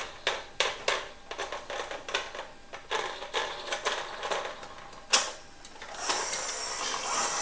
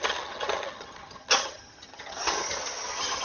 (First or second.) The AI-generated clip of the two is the second